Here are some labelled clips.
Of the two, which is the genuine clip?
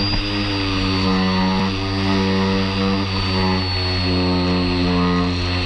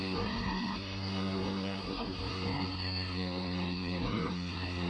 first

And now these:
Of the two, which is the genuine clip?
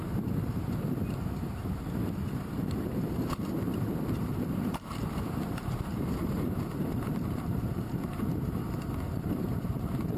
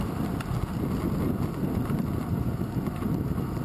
second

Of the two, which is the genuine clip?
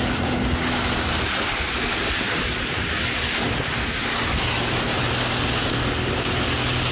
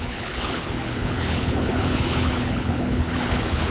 first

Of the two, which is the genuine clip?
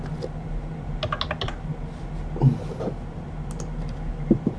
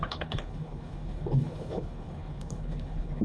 first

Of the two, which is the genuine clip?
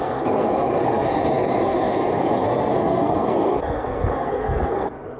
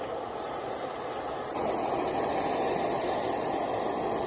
second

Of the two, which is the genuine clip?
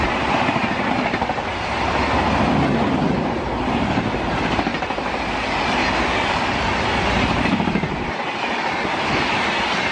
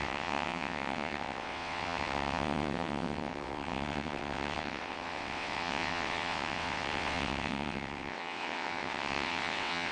first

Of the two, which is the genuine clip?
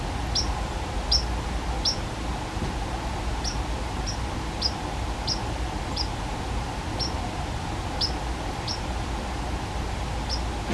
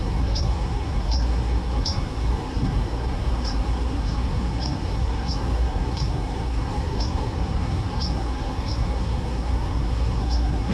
first